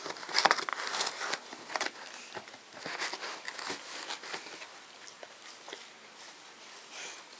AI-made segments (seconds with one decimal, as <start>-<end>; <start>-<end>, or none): none